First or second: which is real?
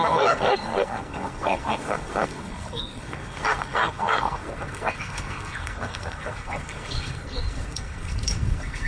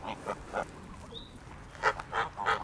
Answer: second